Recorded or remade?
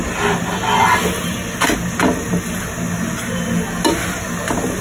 recorded